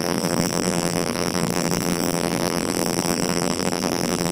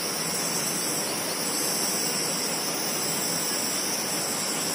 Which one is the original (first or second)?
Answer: second